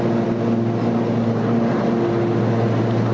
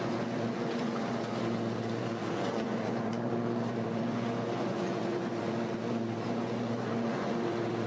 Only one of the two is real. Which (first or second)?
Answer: first